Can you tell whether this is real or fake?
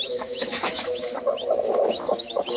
fake